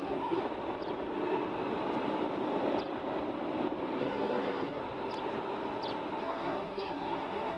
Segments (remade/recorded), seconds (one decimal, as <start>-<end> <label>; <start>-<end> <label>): 0.0-0.4 remade; 0.4-4.0 recorded; 4.0-4.8 remade; 4.8-6.2 recorded; 6.2-7.6 remade